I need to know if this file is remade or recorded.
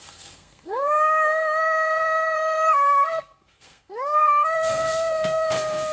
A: remade